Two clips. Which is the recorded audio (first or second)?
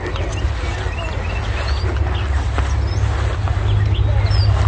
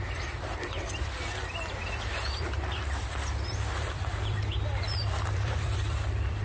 first